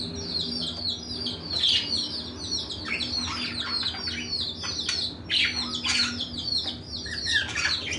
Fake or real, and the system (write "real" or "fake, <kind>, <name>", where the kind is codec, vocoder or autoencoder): real